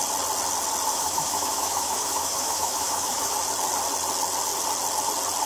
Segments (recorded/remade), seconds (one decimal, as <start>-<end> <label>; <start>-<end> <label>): 0.0-0.9 recorded; 0.9-3.3 remade; 3.3-5.5 recorded